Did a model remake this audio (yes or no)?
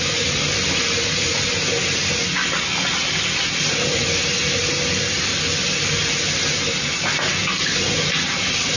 no